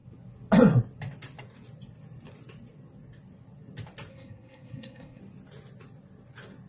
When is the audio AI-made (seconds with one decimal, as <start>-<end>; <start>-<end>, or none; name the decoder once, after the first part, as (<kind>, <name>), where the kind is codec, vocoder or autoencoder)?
4.1-5.2 (codec, SNAC)